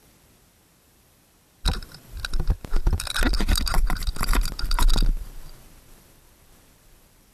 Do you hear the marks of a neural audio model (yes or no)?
yes